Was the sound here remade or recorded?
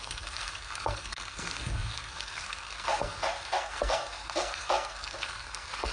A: remade